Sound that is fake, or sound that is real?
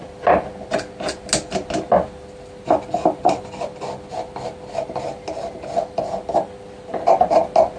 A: real